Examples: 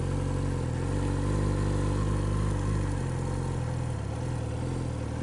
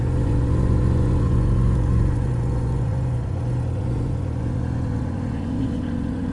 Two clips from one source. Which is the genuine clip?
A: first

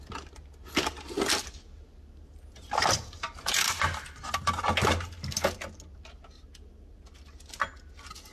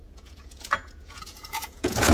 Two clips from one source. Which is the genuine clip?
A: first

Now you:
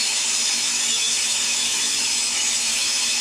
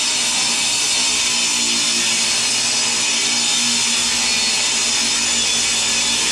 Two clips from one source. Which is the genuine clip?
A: second